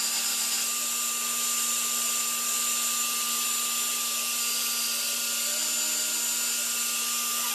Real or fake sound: real